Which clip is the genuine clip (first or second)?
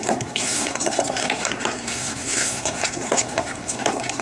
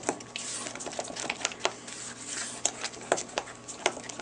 second